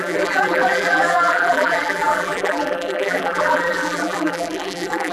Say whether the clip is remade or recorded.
remade